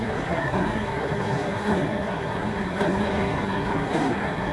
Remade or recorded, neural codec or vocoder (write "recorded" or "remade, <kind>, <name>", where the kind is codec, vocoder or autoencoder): remade, codec, SNAC